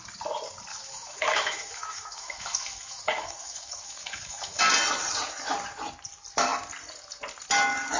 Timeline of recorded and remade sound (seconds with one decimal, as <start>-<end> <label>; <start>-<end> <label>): 0.0-0.7 recorded; 0.7-4.6 remade; 4.6-8.0 recorded